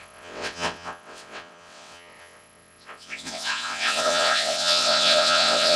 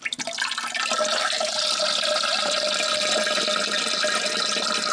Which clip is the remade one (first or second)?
first